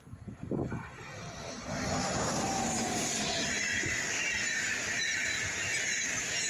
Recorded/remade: recorded